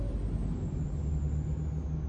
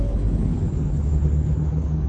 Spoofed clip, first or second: second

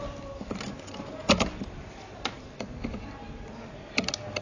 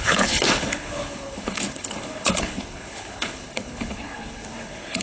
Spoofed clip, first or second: second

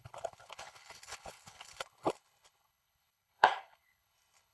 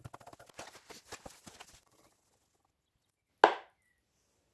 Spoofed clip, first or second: first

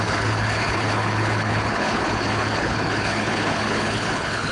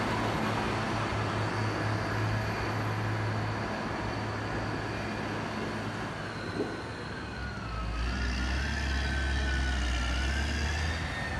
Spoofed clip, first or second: first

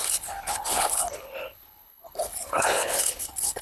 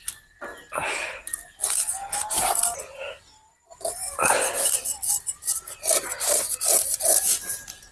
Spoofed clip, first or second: first